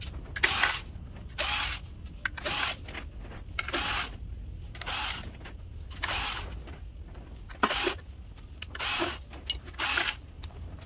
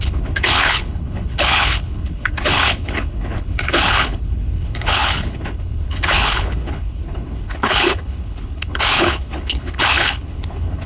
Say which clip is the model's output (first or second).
second